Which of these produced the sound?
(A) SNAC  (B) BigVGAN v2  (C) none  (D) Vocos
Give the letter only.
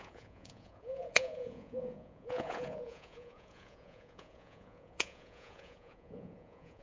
D